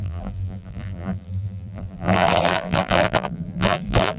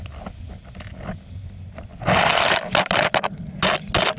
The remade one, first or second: first